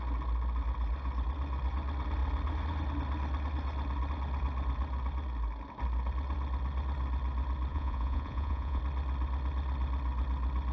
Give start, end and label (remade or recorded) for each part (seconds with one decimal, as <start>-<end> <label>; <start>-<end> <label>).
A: 0.0-7.7 recorded; 7.7-8.8 remade; 8.8-10.7 recorded